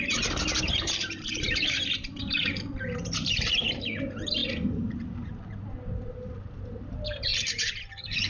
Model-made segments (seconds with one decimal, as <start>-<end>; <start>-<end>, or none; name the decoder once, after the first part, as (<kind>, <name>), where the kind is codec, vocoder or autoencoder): 0.0-8.3 (vocoder, BigVGAN v2)